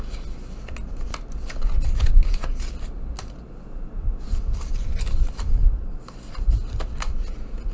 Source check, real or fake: real